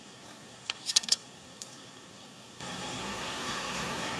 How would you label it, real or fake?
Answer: fake